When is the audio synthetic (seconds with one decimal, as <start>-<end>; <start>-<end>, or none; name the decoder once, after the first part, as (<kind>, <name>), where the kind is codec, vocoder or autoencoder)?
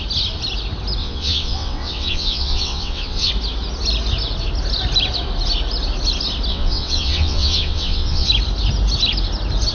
1.0-3.3 (vocoder, WaveNeXt); 6.5-8.3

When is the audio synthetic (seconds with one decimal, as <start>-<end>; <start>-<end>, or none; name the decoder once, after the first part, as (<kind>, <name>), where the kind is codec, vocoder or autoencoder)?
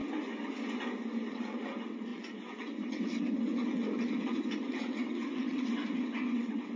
1.3-6.8 (vocoder, WaveNeXt)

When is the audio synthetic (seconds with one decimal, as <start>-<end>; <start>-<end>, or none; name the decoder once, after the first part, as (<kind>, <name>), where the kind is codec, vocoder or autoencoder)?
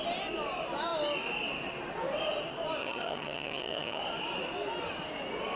2.8-4.0 (vocoder, HiFi-GAN)